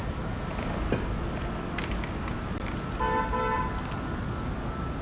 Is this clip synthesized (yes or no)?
no